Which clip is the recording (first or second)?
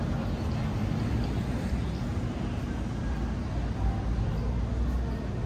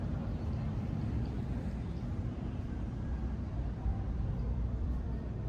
first